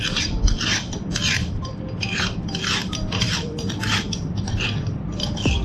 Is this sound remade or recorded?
remade